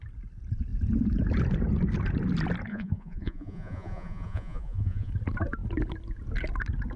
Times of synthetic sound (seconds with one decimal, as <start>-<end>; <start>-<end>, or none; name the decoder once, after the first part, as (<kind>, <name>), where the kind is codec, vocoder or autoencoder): 2.7-5.1 (vocoder, Vocos)